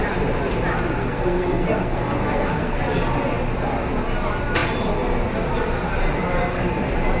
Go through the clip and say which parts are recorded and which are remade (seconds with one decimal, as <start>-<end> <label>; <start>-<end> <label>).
0.0-1.0 recorded; 1.0-2.8 remade; 2.8-7.2 recorded